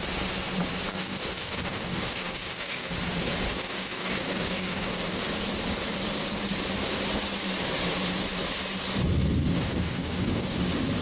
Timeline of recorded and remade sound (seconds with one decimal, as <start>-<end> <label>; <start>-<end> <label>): 0.0-0.9 recorded; 0.9-2.9 remade; 2.9-3.5 recorded; 3.5-5.3 remade; 5.3-9.4 recorded; 9.4-10.6 remade; 10.6-11.0 recorded